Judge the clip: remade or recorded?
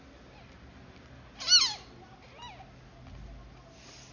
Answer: recorded